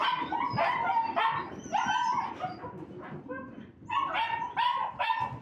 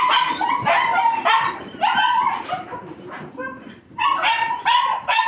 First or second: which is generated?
second